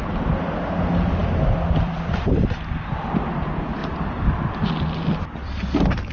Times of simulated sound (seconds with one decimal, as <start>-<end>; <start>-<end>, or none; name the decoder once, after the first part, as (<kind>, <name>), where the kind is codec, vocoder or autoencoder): 1.2-3.4 (vocoder, BigVGAN v2); 3.8-4.7